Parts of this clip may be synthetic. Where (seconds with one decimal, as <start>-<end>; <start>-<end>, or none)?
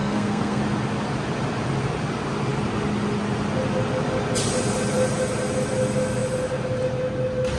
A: 0.0-0.6